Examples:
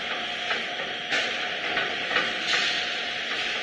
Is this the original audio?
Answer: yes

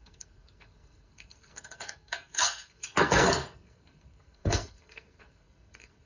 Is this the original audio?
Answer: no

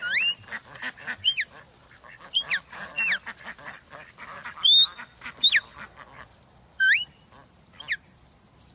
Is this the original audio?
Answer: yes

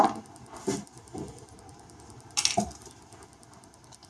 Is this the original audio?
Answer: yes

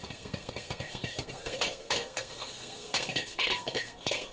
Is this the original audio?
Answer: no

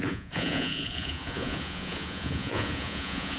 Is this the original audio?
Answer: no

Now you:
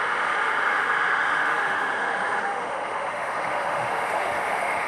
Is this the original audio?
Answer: no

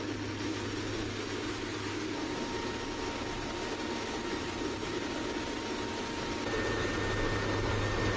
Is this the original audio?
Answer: yes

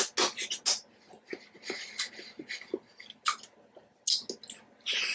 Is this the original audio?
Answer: yes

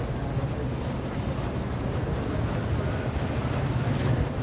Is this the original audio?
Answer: yes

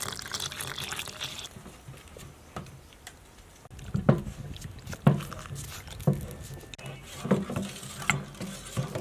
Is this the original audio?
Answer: yes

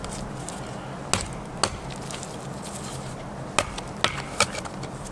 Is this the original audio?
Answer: yes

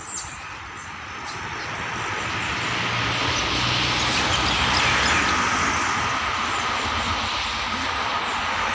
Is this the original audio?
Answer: yes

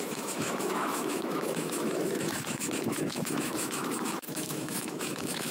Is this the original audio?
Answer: no